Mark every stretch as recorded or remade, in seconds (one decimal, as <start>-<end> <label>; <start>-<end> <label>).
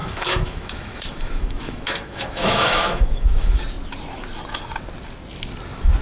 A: 0.0-3.6 remade; 3.6-6.0 recorded